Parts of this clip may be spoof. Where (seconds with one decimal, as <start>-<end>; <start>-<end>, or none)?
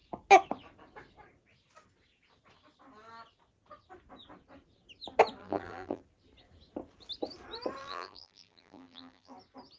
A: 5.4-6.0; 7.8-9.3